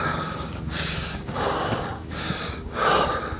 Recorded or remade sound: remade